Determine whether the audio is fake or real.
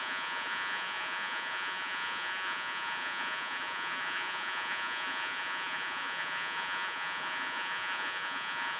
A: fake